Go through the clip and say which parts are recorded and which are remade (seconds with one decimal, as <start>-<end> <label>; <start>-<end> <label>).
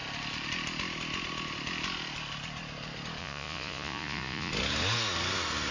0.0-3.2 recorded; 3.2-4.5 remade; 4.5-5.7 recorded